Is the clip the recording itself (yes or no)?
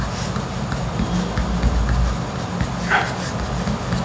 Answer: yes